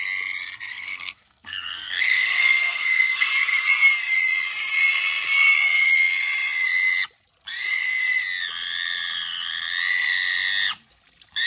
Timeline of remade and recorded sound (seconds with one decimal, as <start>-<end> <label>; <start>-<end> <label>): 0.0-0.7 recorded; 0.7-3.3 remade; 3.3-11.5 recorded